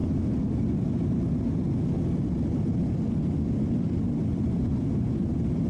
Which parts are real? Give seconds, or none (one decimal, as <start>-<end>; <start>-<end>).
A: 0.0-5.7